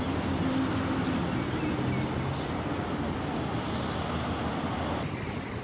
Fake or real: real